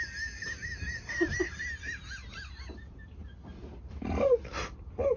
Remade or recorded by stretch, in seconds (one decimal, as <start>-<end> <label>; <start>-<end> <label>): 0.0-5.2 recorded